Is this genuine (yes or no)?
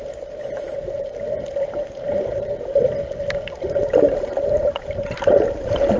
yes